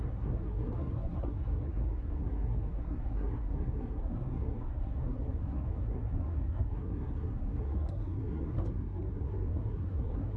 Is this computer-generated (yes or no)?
yes